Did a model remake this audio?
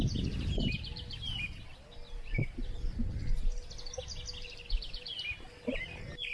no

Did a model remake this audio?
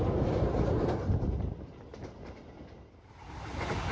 no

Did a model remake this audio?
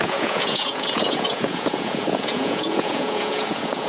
yes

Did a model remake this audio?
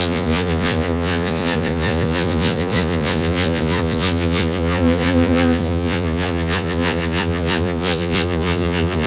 yes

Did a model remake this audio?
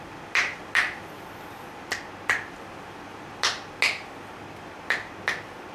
no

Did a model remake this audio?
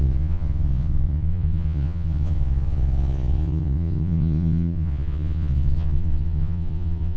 yes